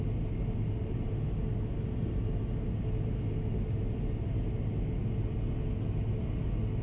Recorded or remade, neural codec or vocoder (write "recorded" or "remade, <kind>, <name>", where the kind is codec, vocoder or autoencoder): recorded